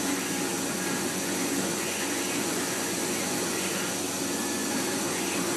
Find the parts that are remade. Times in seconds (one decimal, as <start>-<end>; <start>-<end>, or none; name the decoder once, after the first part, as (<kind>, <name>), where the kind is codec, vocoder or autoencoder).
0.0-5.6 (vocoder, Vocos)